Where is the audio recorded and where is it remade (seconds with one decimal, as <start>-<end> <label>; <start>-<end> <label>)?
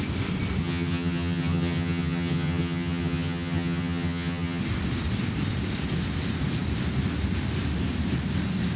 0.0-0.6 recorded; 0.6-4.6 remade; 4.6-8.8 recorded